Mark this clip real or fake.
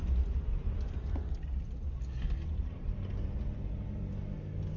real